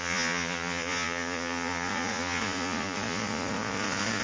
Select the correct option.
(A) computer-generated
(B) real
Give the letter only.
A